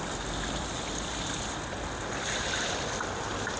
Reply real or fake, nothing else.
real